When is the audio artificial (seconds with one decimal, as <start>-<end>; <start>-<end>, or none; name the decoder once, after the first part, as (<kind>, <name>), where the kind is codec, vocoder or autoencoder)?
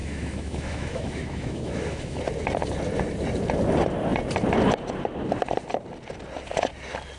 0.0-2.2 (autoencoder, DAC-VAE)